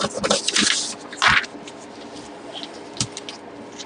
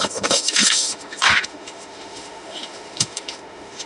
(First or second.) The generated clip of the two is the second